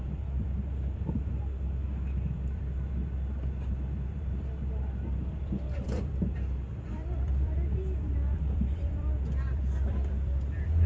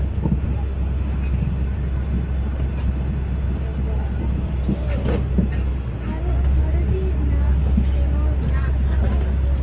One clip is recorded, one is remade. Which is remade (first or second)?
first